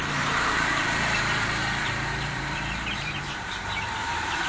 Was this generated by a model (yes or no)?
yes